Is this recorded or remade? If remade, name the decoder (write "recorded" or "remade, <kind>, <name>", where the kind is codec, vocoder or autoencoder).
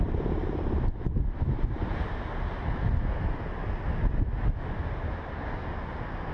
recorded